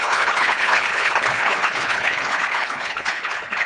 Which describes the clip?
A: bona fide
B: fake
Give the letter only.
B